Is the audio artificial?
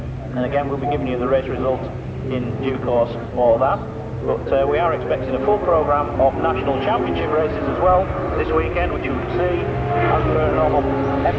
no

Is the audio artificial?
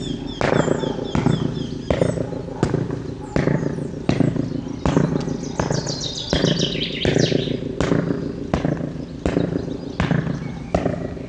no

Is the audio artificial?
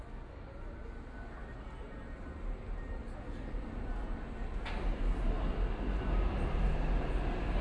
no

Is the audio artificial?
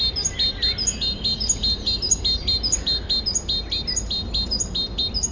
no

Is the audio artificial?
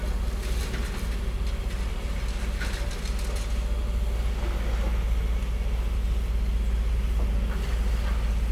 no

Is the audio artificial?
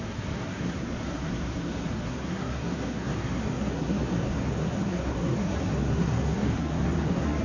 yes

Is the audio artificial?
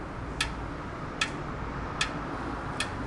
no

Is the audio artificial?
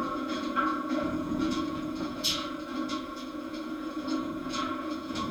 yes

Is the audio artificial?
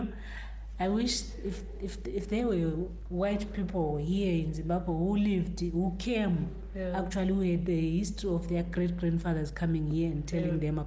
no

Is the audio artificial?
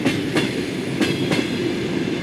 no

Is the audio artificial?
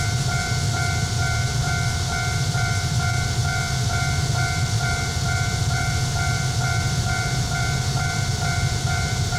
yes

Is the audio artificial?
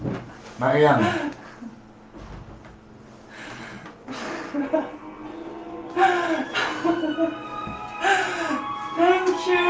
no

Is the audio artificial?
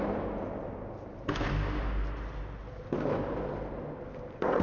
no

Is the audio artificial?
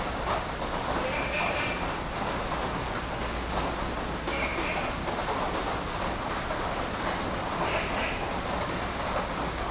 no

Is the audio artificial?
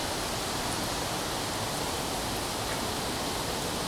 no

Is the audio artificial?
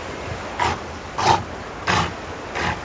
no